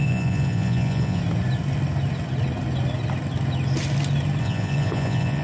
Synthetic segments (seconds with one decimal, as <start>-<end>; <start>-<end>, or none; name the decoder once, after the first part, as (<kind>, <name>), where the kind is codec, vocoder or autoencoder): 0.0-1.2 (vocoder, Vocos); 4.4-5.4